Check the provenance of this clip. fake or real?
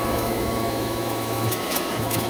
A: fake